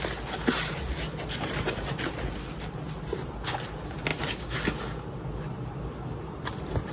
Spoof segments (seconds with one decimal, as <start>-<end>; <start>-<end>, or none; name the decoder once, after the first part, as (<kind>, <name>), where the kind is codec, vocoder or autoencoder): none